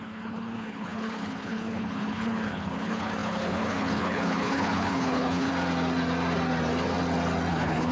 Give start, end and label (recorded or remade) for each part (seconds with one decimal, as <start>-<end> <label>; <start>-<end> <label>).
0.0-5.5 remade; 5.5-7.5 recorded; 7.5-7.9 remade